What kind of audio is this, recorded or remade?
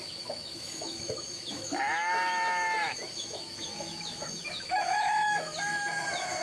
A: remade